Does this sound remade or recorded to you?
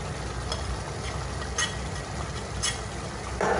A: recorded